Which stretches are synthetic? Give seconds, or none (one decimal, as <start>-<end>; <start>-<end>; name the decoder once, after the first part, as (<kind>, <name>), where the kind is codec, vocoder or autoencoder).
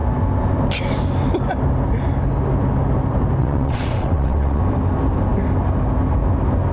3.4-4.6 (vocoder, WaveNeXt)